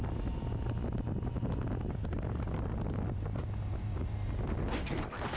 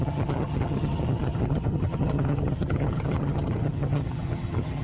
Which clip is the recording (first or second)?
first